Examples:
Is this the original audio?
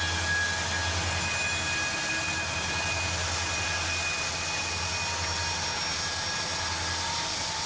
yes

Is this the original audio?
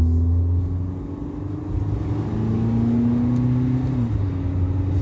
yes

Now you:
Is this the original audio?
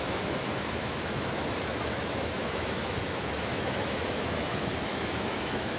no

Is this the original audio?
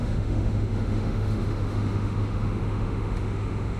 no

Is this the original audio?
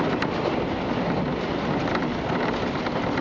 yes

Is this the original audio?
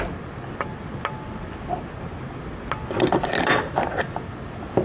yes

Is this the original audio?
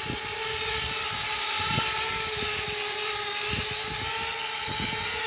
yes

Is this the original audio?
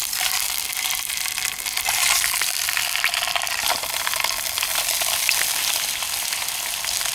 yes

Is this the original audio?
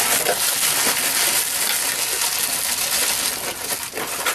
yes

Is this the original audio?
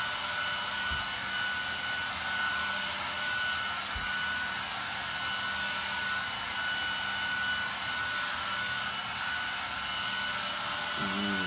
yes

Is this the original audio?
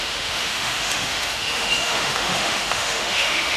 no